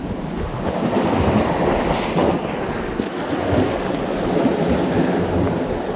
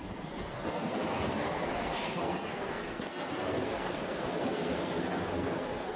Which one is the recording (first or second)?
first